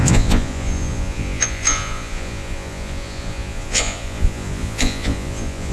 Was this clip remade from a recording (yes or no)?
yes